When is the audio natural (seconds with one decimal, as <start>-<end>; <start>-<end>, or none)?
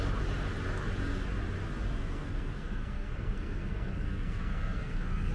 0.0-2.0